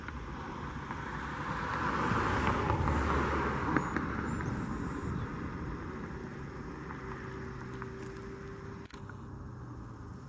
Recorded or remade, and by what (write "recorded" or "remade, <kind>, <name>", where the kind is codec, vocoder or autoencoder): recorded